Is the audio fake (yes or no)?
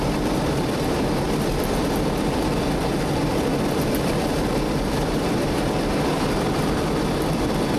yes